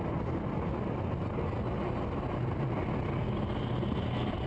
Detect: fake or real real